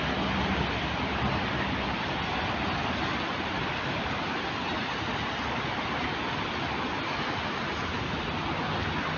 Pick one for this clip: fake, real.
real